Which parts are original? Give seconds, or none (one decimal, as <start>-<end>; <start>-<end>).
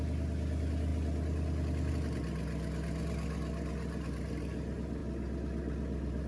0.0-6.3